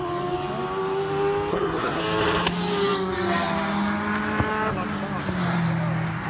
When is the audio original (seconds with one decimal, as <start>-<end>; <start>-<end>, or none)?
0.0-1.5; 2.0-6.3